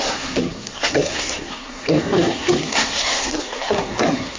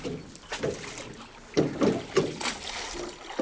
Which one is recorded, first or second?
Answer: second